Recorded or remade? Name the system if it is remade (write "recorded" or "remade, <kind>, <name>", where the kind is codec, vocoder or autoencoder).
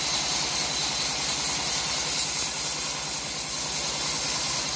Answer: recorded